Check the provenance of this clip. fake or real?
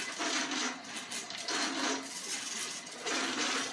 real